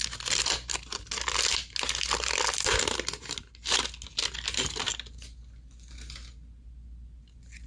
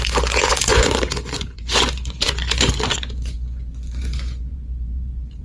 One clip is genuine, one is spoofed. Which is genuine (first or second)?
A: first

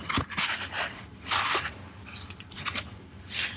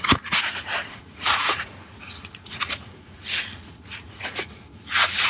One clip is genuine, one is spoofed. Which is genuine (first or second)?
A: first